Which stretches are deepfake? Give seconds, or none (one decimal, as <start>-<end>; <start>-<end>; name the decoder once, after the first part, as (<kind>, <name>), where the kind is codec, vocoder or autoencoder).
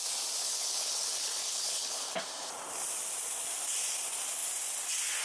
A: 0.4-2.2 (codec, HILCodec)